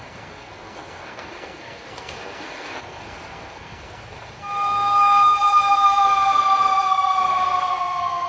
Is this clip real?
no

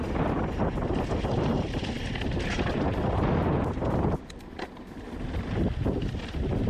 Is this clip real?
yes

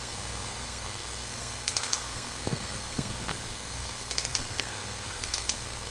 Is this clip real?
no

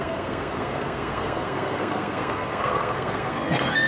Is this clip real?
no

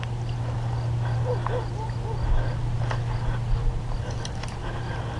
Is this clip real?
yes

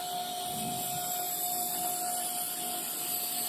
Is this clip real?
yes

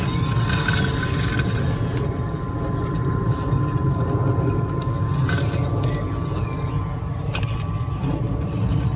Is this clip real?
yes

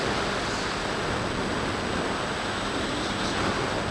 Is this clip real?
yes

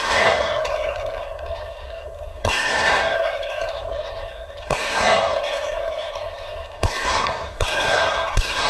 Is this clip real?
no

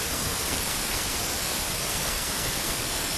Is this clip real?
no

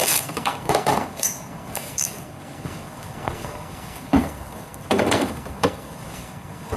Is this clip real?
no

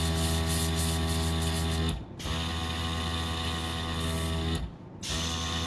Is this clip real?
yes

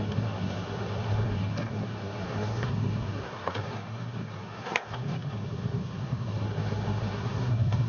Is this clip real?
no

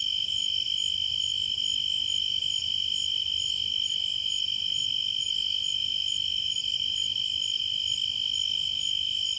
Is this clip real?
yes